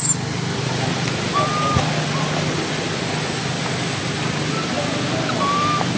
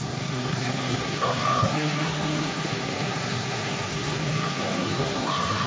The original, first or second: first